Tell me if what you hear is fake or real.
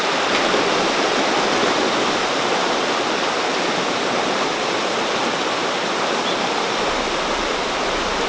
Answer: real